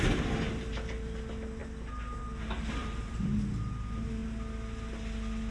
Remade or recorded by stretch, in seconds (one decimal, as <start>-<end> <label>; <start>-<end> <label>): 0.0-2.8 recorded; 2.8-3.5 remade; 3.5-5.5 recorded